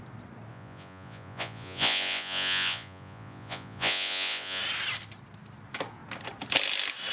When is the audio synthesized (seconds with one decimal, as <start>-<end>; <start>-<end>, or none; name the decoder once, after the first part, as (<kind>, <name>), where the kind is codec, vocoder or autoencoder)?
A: 0.5-4.6 (vocoder, Vocos)